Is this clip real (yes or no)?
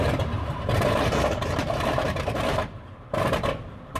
no